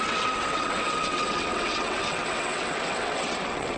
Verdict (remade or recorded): remade